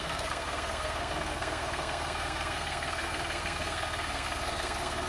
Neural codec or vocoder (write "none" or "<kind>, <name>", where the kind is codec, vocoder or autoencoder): codec, SNAC